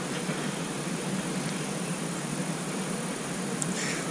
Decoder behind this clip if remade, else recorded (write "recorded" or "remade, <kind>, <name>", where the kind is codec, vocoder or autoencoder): remade, vocoder, BigVGAN v2